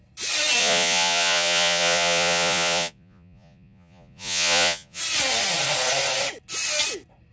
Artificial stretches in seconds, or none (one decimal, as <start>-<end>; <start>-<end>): 0.6-5.0